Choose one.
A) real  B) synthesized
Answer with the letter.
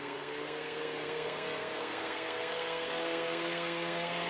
B